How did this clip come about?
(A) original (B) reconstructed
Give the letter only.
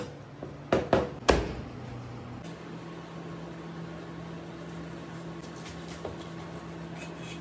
A